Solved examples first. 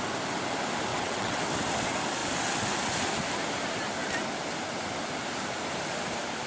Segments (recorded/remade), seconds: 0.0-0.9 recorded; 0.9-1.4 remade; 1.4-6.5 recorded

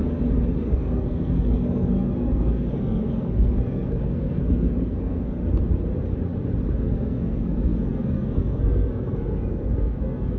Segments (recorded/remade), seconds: 0.0-0.6 recorded; 0.6-5.4 remade; 5.4-6.8 recorded; 6.8-10.4 remade